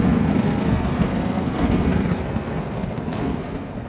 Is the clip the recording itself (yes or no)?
no